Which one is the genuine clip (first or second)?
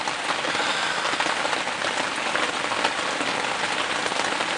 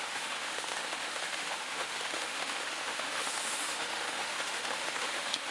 first